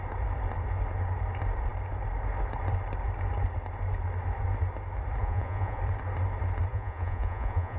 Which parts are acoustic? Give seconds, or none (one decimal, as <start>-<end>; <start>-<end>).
0.0-5.2; 5.8-6.7